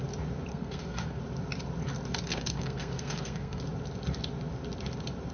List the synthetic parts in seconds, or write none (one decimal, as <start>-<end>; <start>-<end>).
0.5-1.2; 2.3-3.6